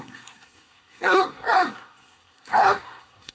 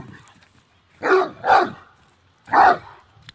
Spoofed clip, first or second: first